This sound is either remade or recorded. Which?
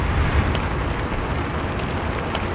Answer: recorded